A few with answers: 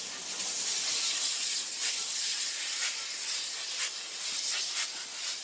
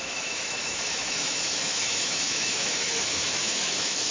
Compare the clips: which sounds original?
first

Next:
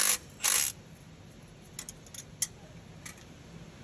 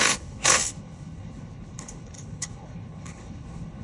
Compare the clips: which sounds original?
first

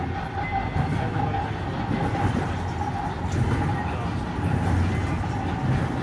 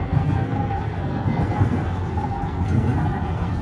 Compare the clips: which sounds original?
first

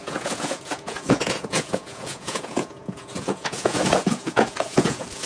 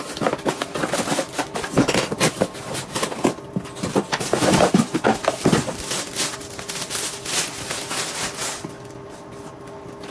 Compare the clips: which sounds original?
second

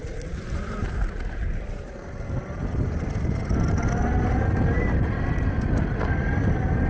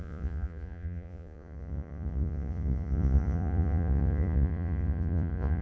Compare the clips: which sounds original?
first